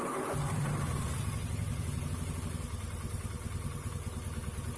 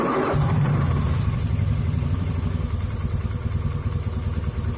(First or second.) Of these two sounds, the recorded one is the first